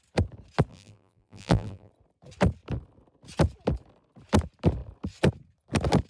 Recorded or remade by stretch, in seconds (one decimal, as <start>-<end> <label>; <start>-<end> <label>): 0.0-0.7 recorded; 0.7-1.9 remade; 1.9-6.1 recorded